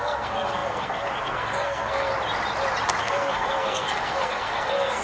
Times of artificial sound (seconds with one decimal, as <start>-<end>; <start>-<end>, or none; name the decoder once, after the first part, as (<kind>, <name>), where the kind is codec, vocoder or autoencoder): 0.0-2.1 (codec, SNAC); 3.0-5.0